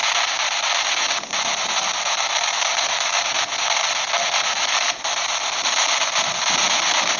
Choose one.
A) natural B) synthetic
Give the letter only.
A